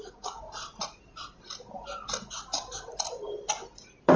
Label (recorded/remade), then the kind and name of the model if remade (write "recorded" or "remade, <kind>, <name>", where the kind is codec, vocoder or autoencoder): recorded